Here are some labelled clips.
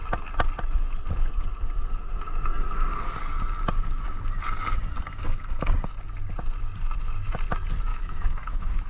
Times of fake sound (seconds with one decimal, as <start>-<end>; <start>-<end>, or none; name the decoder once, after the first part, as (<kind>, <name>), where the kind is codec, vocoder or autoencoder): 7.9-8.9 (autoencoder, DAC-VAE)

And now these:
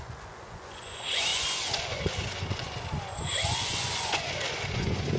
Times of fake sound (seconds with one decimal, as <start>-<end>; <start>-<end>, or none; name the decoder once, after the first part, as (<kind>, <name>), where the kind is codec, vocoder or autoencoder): 0.0-5.2 (vocoder, Vocos)

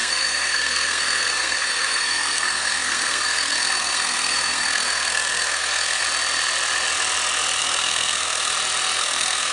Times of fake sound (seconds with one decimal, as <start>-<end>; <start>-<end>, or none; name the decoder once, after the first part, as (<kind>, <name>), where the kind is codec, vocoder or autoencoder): 0.0-6.0 (codec, SNAC); 7.6-8.5; 9.0-9.5

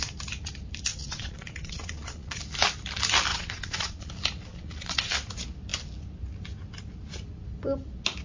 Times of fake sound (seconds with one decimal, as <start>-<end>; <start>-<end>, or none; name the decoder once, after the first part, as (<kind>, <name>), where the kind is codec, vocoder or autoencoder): 0.9-2.4 (vocoder, Vocos); 3.3-4.1; 4.5-5.1